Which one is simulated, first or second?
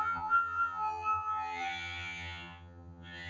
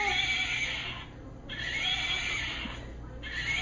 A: first